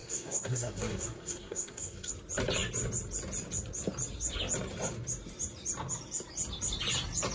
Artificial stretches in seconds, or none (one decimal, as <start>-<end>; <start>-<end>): 0.0-2.1